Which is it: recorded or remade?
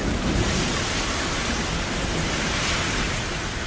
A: recorded